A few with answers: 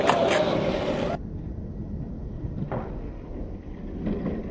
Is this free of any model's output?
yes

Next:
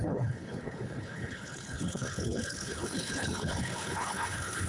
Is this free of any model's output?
no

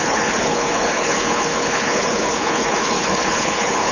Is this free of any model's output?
no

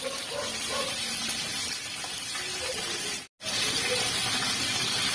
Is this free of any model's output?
yes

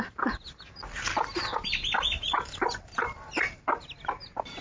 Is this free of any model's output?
yes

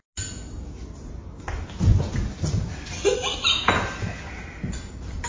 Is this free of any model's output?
yes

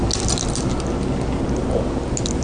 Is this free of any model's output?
yes